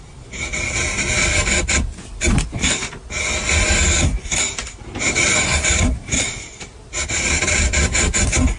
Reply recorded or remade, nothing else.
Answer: recorded